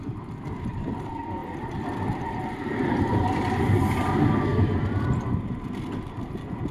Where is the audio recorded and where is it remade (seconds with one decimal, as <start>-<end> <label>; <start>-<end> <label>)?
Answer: 0.0-1.4 recorded; 1.4-4.1 remade; 4.1-6.7 recorded